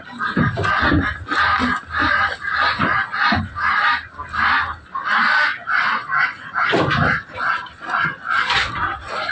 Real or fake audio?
real